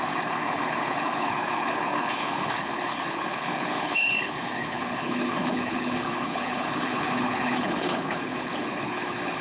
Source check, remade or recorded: remade